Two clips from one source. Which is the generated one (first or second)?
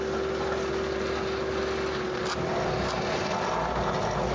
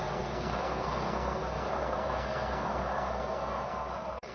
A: second